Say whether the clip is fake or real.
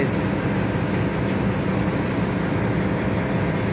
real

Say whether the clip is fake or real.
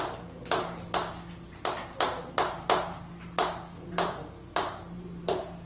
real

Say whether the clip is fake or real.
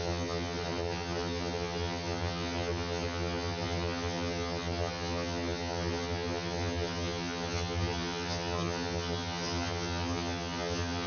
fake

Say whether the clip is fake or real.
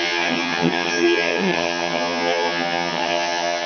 fake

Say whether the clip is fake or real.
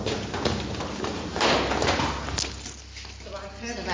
real